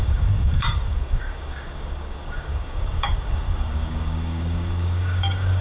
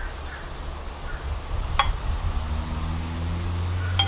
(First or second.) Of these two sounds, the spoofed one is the first